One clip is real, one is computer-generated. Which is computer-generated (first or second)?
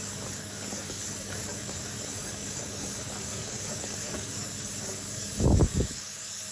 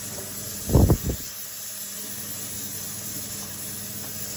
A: first